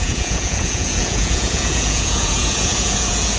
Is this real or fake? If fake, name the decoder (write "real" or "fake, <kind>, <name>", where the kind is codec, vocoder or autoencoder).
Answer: fake, vocoder, Vocos